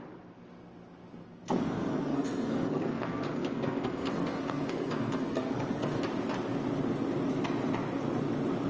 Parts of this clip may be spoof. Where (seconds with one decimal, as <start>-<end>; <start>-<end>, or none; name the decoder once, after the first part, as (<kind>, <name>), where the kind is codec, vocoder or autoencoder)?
1.2-6.0 (codec, SNAC)